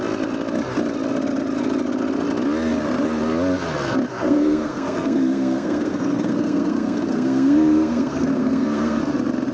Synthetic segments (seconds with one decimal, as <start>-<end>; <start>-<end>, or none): 4.1-9.0